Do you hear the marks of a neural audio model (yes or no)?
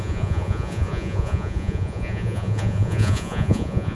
yes